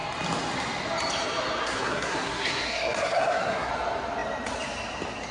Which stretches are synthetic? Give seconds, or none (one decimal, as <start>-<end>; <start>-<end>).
1.6-3.7